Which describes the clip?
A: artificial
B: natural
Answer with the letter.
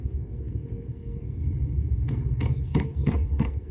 A